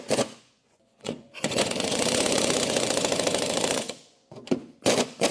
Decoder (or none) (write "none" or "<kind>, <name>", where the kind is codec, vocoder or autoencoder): vocoder, Vocos